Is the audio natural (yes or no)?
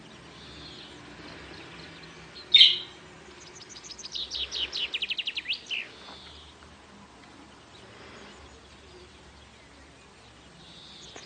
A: yes